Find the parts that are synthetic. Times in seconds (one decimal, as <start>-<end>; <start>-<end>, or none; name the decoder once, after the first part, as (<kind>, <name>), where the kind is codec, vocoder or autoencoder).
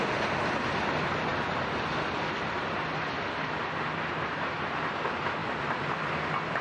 none